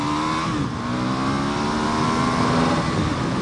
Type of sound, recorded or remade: recorded